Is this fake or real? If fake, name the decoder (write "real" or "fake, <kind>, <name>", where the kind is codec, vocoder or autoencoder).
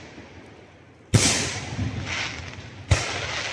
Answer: real